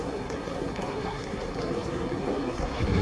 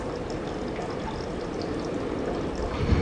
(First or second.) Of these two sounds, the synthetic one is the first